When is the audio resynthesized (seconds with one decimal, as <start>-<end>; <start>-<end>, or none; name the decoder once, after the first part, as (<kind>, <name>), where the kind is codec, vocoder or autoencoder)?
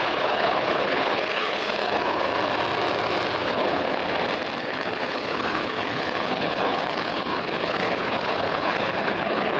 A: 0.0-2.3 (codec, HILCodec); 3.4-4.0; 4.6-9.6